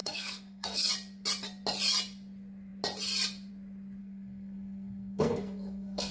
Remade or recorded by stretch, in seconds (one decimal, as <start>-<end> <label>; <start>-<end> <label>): 0.0-0.9 remade; 0.9-4.0 recorded; 4.0-6.1 remade